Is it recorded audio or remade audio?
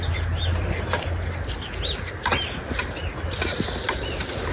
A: recorded